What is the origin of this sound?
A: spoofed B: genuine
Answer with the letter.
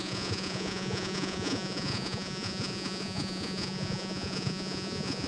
A